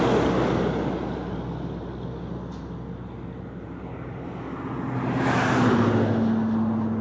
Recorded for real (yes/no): yes